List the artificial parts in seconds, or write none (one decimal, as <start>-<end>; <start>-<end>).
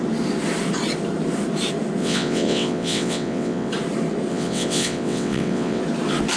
2.0-3.7; 4.3-5.8